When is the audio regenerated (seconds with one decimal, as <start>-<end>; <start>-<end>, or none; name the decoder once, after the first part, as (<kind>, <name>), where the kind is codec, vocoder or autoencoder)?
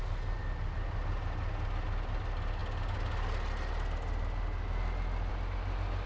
none